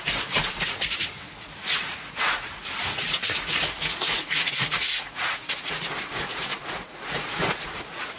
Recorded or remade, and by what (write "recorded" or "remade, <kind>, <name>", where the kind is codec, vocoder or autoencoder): remade, vocoder, Vocos